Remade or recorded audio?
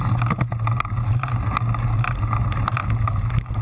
recorded